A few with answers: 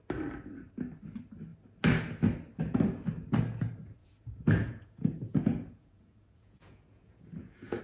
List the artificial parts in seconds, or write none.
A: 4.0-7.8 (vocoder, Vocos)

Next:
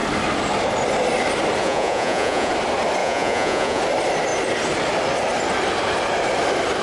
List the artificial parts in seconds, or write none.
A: 1.6-2.5 (vocoder, Vocos); 3.0-3.8

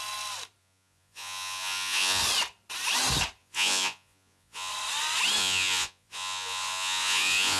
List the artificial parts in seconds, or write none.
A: 0.6-2.2 (vocoder, Vocos); 3.4-4.7; 5.4-7.6

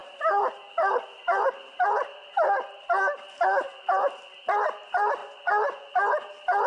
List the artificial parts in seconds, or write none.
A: 5.2-5.9 (vocoder, Vocos)

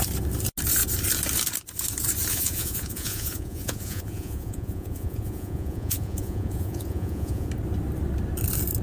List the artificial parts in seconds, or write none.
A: 2.3-7.5 (vocoder, Vocos)

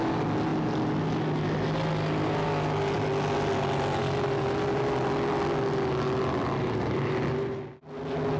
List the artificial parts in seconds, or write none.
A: none

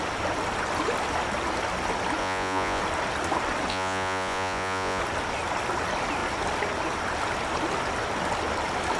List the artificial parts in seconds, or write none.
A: 2.2-2.8 (vocoder, Vocos); 3.7-5.0

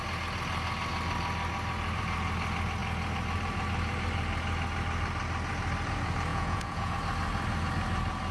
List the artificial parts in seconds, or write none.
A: 6.3-6.9 (vocoder, Vocos)